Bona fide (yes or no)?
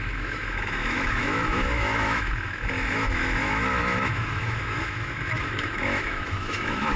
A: no